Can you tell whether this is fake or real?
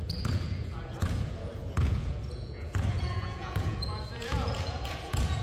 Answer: fake